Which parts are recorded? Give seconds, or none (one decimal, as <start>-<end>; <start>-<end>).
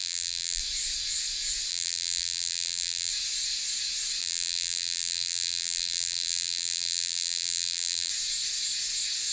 0.6-1.7; 3.1-4.2; 8.1-9.3